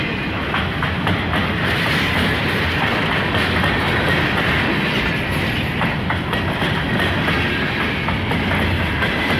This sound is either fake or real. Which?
real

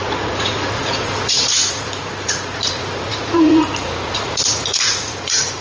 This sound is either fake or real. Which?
fake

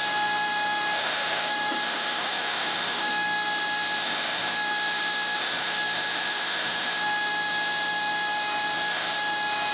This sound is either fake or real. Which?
fake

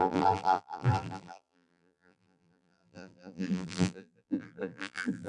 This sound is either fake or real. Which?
fake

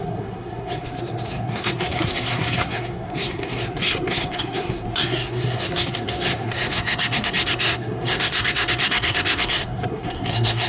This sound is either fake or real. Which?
fake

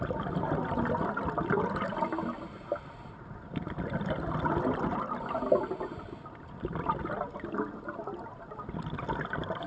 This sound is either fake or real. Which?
real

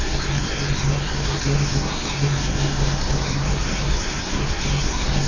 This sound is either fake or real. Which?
fake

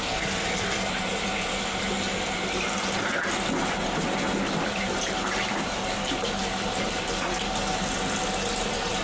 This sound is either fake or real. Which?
real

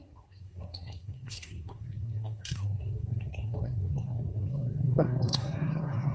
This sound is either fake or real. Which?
fake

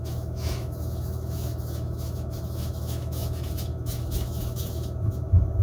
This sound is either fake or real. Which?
fake